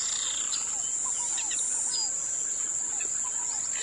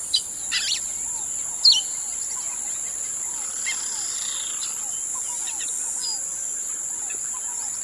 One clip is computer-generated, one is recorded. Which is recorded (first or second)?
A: second